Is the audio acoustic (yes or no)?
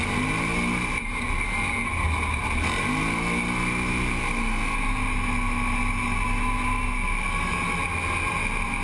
yes